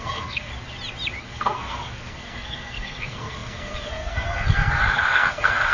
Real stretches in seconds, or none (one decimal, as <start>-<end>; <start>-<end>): 0.5-1.2